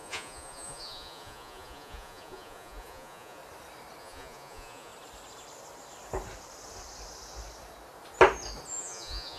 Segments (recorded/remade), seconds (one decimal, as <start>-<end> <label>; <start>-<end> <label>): 0.0-3.4 remade; 3.4-4.0 recorded; 4.0-4.9 remade; 4.9-8.7 recorded; 8.7-9.4 remade